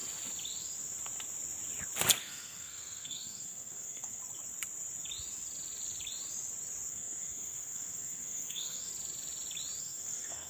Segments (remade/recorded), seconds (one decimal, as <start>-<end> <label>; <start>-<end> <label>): 0.0-2.2 recorded; 2.2-4.2 remade; 4.2-6.9 recorded; 6.9-8.9 remade; 8.9-9.8 recorded; 9.8-10.5 remade